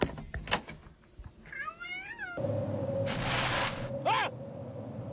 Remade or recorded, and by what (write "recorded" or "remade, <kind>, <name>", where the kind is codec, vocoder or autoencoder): recorded